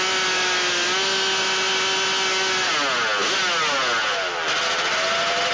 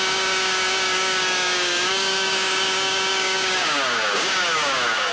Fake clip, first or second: second